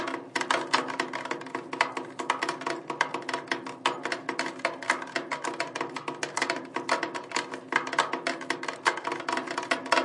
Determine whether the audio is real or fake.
real